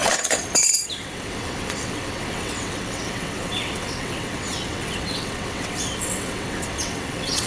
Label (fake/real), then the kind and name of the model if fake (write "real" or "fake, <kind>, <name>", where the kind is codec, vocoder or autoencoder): fake, vocoder, WaveNeXt